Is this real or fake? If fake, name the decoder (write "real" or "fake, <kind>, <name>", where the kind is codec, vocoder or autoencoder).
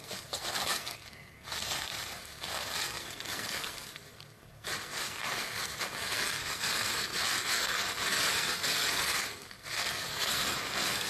fake, codec, SNAC